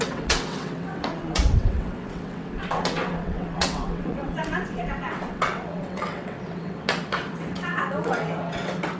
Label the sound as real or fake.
fake